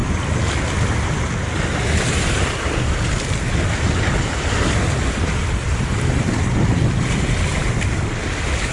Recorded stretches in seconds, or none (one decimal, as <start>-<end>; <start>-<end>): 0.0-8.7